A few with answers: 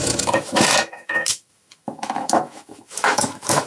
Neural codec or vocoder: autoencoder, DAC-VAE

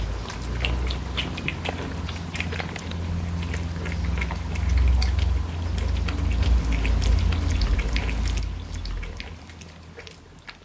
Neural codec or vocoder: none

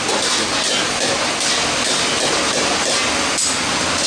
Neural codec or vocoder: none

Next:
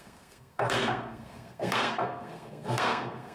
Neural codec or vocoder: codec, SNAC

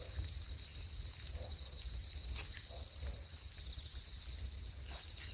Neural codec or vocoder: none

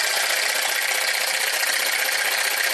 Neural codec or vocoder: none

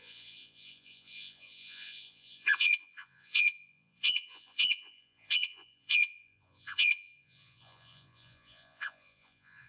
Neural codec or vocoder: vocoder, Vocos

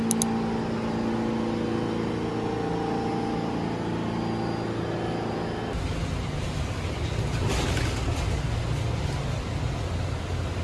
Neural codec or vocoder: none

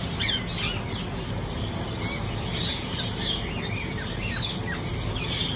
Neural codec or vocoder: none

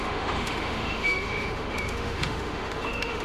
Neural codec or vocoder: autoencoder, DAC-VAE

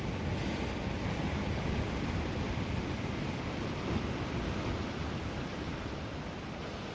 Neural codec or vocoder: none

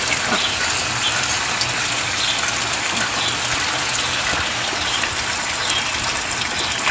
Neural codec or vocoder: none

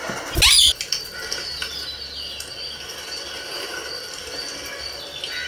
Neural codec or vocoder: none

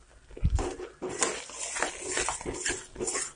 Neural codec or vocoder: none